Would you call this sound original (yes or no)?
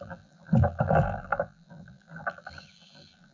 no